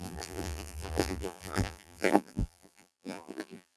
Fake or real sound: fake